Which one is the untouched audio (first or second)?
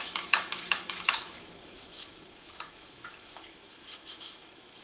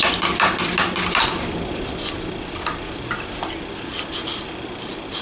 second